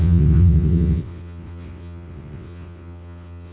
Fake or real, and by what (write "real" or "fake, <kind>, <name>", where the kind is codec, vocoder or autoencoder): fake, vocoder, WaveNeXt